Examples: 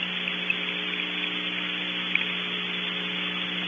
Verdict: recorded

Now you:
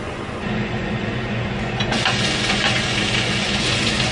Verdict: remade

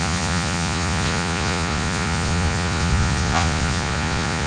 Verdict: remade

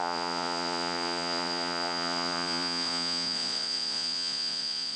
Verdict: remade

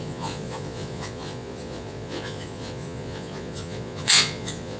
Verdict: remade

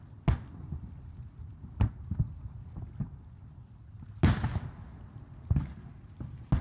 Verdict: recorded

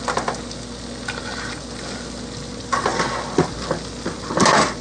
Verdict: recorded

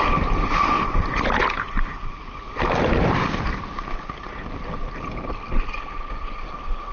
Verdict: recorded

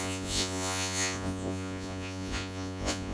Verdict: remade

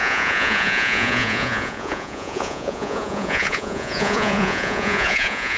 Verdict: remade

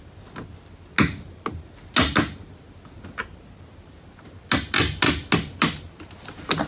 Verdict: recorded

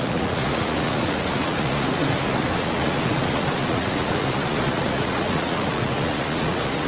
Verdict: remade